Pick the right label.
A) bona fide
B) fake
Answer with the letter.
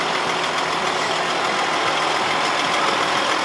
A